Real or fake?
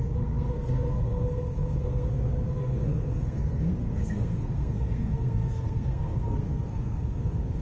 fake